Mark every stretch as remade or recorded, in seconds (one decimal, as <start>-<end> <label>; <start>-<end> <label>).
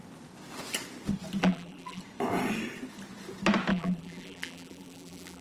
0.0-1.4 recorded; 1.4-2.0 remade; 2.0-3.7 recorded; 3.7-5.4 remade